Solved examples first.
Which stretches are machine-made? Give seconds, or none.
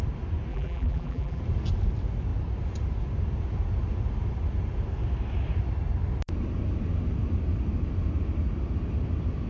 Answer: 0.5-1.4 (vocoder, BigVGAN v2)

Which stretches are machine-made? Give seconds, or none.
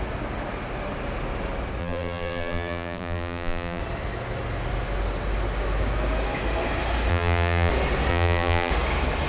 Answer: 1.8-3.8 (vocoder, BigVGAN v2); 7.1-7.7; 8.1-8.7